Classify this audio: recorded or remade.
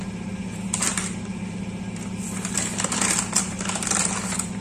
recorded